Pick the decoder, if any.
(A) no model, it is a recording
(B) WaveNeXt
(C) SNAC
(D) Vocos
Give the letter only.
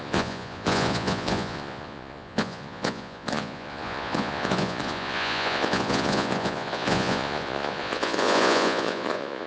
D